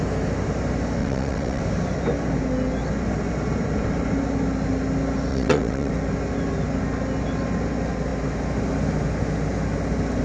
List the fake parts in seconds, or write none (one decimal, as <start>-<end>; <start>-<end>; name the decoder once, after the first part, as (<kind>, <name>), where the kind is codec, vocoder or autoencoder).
1.0-1.6 (vocoder, WaveNeXt); 5.3-5.9